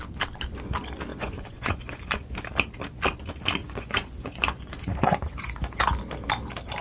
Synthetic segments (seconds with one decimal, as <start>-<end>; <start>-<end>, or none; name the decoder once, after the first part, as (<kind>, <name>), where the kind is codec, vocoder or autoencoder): 1.1-2.3 (vocoder, Vocos); 3.6-5.8

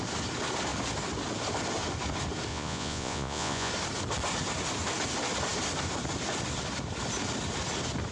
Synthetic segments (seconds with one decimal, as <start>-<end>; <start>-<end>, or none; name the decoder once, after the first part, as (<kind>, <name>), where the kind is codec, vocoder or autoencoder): 2.5-3.7 (vocoder, Vocos)

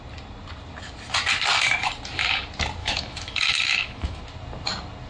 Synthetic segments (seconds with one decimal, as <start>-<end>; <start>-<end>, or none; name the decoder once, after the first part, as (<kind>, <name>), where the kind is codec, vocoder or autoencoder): 2.8-4.2 (autoencoder, DAC-VAE)

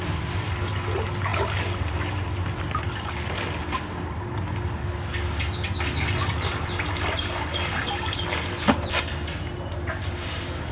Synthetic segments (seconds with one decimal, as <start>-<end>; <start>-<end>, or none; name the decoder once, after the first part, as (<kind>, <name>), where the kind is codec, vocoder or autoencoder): none

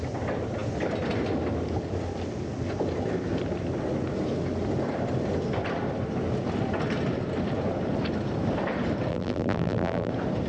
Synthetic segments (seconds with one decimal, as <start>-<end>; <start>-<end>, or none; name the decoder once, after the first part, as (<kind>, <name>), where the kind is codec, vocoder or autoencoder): 9.1-10.1 (vocoder, BigVGAN v2)

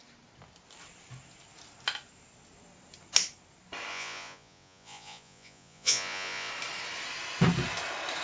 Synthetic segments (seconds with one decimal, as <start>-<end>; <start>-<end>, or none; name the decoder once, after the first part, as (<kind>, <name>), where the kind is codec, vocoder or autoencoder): 3.9-6.5 (vocoder, Vocos)

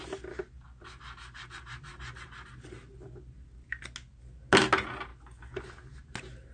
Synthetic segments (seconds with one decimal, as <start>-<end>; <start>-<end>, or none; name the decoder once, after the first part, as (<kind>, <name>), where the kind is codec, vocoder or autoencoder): none